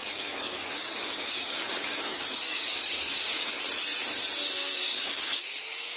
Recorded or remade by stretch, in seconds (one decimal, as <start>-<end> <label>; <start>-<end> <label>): 0.0-3.6 remade; 3.6-4.6 recorded; 4.6-6.0 remade